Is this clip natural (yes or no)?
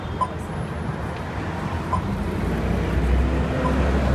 yes